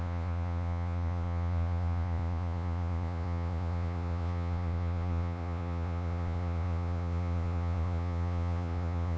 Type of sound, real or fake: fake